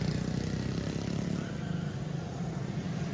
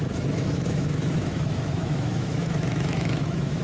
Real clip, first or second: first